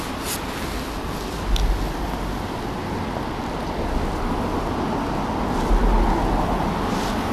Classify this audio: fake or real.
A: real